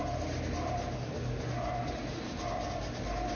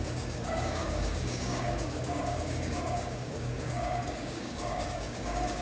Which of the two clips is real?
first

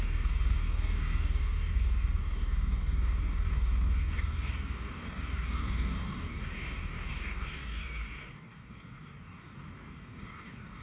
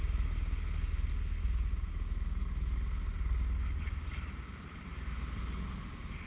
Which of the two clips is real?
second